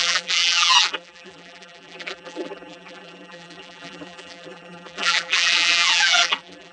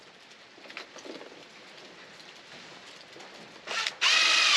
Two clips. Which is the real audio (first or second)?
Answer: second